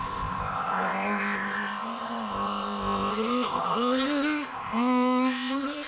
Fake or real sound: fake